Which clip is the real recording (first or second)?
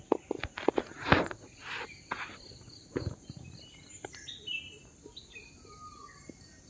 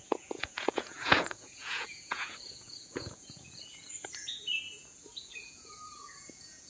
first